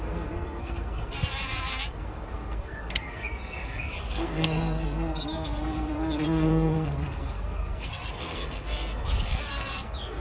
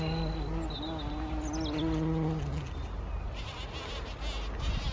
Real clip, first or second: second